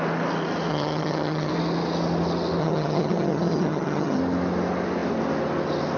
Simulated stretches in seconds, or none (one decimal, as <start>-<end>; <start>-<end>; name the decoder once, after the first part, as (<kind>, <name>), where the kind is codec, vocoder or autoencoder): 0.7-1.5 (vocoder, HiFi-GAN); 2.6-4.2